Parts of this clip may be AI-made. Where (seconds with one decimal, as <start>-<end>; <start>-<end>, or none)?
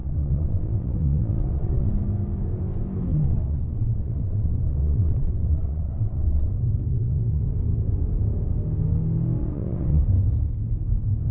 0.0-1.9; 3.1-6.5; 6.9-7.4; 9.4-10.0